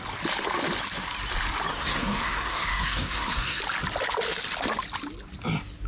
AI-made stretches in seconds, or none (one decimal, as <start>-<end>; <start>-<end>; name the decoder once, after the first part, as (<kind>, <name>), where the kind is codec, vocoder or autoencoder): 1.7-3.6 (codec, SNAC)